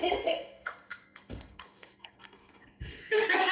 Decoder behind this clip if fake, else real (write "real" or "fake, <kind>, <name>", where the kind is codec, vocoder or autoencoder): fake, codec, SNAC